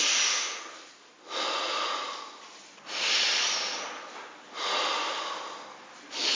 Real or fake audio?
real